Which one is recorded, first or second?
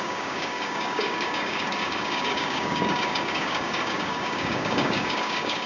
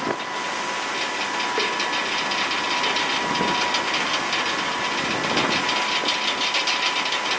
second